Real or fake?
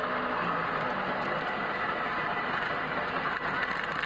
real